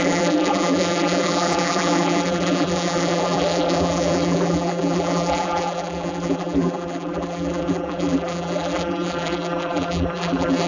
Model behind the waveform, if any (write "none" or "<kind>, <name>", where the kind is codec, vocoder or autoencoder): vocoder, BigVGAN v2